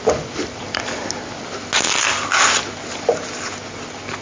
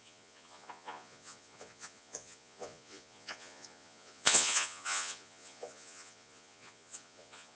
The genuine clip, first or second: first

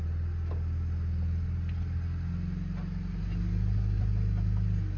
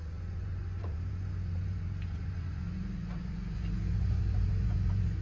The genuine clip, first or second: first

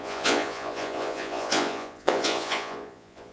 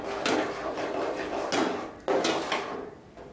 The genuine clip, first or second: second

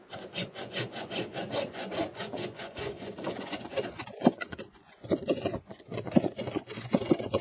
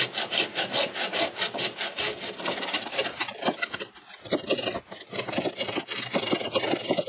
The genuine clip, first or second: second